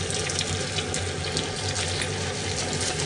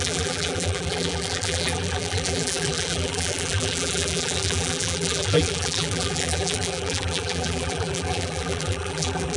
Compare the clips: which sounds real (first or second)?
first